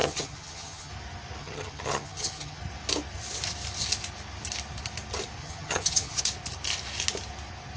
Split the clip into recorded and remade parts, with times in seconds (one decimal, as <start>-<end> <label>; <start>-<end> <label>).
0.0-0.9 remade; 0.9-1.4 recorded; 1.4-2.6 remade; 2.6-5.4 recorded; 5.4-6.2 remade; 6.2-7.8 recorded